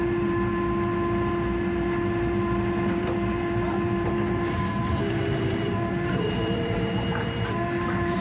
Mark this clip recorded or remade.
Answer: remade